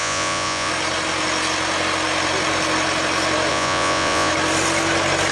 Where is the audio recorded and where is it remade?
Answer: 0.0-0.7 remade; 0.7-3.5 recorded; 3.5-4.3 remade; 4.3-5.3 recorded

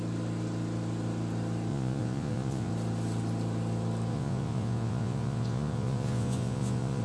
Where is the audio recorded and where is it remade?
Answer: 0.0-1.7 recorded; 1.7-2.7 remade; 2.7-4.1 recorded; 4.1-7.0 remade

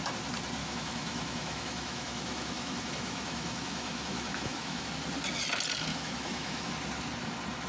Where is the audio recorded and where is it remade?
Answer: 0.0-0.6 recorded; 0.6-4.9 remade; 4.9-5.9 recorded; 5.9-6.7 remade; 6.7-7.7 recorded